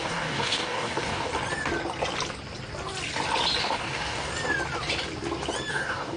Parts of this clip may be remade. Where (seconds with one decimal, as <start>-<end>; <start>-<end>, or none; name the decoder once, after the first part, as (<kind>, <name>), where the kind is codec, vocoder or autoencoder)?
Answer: 0.0-1.3 (codec, DAC); 3.6-4.3; 5.7-6.2